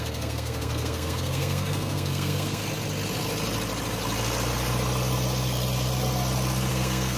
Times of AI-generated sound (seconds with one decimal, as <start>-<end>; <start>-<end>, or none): 0.0-2.6; 6.7-7.2